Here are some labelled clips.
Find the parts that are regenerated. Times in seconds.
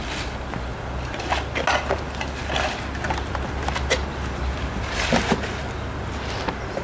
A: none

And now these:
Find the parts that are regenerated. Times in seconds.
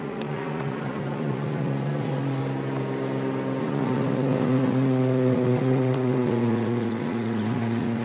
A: 0.0-2.4 (vocoder, Vocos); 3.6-8.0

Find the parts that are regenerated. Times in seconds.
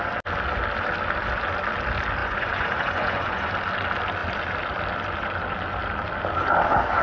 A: 2.2-3.5 (vocoder, Vocos)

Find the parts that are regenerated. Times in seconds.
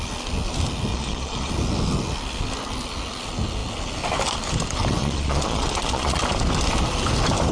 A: 0.9-1.5 (vocoder, Vocos); 5.0-6.2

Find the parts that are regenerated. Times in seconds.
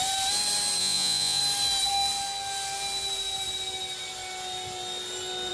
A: 0.8-1.4 (vocoder, Vocos)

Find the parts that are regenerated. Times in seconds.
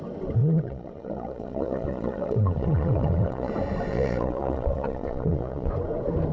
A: 0.4-3.5 (vocoder, Vocos); 3.9-5.7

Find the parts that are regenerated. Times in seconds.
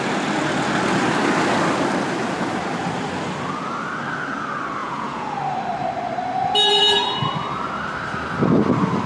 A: 4.8-5.4 (vocoder, Vocos)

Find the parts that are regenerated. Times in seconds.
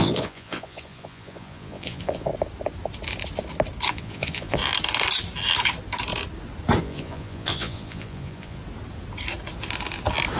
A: 0.0-2.3 (vocoder, Vocos); 3.9-4.6; 6.8-8.6